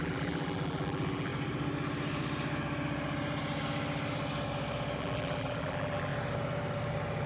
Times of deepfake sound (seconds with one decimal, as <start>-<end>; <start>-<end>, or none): 0.0-1.3; 5.0-6.1